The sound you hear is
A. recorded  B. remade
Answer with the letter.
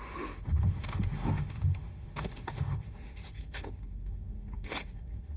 B